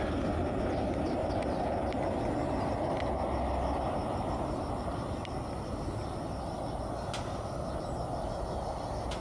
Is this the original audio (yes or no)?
yes